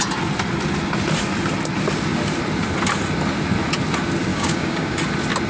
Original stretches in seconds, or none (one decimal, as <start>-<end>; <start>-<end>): 0.0-4.3; 5.0-5.5